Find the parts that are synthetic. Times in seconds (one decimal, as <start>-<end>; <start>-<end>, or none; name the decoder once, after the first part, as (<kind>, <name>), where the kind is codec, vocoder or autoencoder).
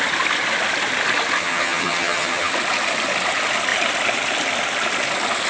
1.4-2.5 (vocoder, HiFi-GAN)